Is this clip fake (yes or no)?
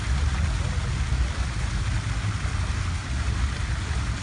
no